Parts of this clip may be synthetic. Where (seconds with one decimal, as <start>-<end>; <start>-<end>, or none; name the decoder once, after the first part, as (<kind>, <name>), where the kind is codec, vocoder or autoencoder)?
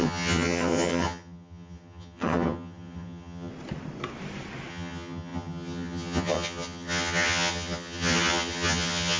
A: 0.0-3.5 (vocoder, HiFi-GAN); 4.7-9.2